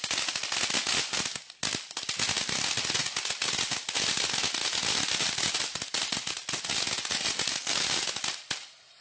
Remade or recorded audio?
recorded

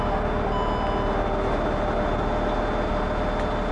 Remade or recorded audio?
recorded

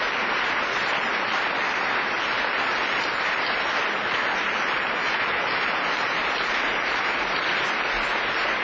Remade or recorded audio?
recorded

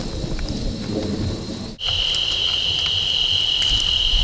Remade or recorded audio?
recorded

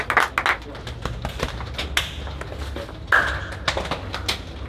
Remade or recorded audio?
recorded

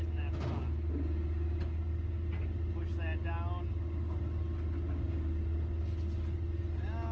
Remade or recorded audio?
recorded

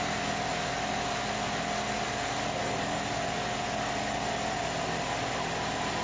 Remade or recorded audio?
recorded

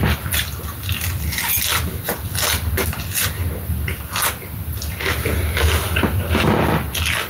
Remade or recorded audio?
recorded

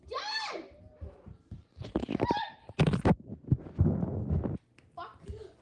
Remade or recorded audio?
recorded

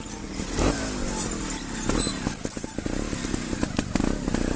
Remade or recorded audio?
recorded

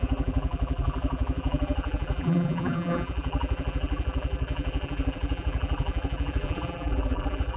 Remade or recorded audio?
remade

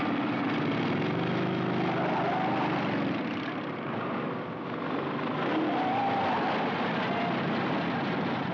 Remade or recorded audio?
recorded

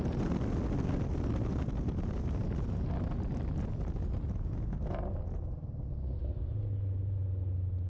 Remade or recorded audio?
recorded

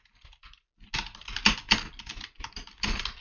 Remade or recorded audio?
recorded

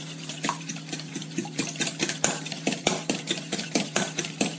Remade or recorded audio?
remade